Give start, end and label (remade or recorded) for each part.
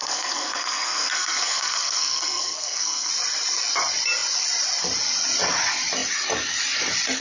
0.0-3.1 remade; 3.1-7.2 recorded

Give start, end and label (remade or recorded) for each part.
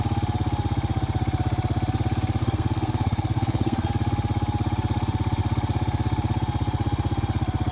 0.0-2.4 recorded; 2.4-3.9 remade; 3.9-7.7 recorded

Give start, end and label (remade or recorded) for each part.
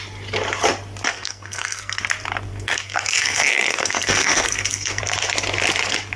0.0-1.1 recorded; 1.1-2.0 remade; 2.0-2.5 recorded; 2.5-5.0 remade; 5.0-6.2 recorded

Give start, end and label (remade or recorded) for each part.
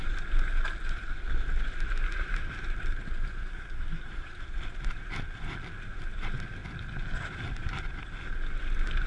0.0-3.5 recorded; 3.5-4.1 remade; 4.1-9.1 recorded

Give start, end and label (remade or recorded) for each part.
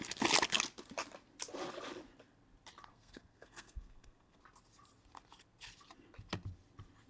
0.0-2.9 recorded; 2.9-4.4 remade; 4.4-7.1 recorded